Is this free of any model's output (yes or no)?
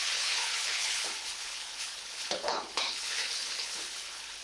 no